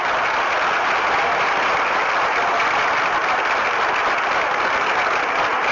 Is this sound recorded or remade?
recorded